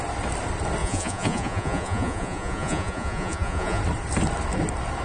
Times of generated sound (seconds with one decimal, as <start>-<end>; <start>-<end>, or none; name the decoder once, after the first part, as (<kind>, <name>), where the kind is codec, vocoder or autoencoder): 0.8-3.8 (vocoder, Vocos)